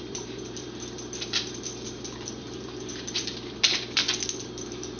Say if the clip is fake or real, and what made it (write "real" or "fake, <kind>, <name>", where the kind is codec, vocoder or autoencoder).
fake, vocoder, BigVGAN v2